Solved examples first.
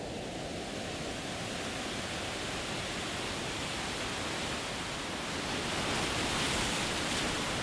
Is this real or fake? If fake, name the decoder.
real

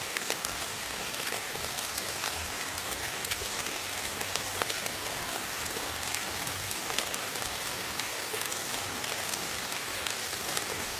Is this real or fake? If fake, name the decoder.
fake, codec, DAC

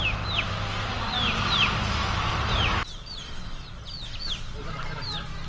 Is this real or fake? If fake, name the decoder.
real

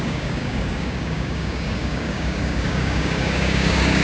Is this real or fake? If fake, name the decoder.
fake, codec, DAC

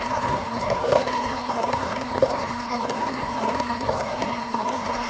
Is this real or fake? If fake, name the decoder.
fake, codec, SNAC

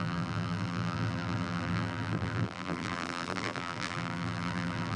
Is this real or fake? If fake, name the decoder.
fake, vocoder, BigVGAN v2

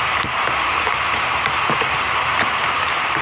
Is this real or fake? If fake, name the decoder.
fake, vocoder, BigVGAN v2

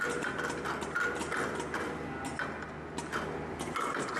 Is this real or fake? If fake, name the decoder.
real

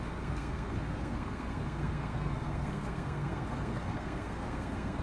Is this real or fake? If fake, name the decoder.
fake, codec, SNAC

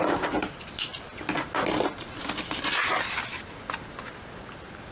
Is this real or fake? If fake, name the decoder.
real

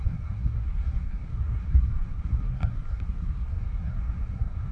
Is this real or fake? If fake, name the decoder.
fake, codec, SNAC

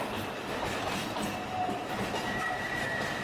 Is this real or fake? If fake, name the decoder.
fake, vocoder, BigVGAN v2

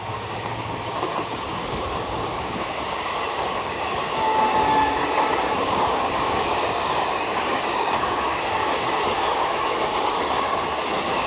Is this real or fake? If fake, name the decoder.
fake, codec, DAC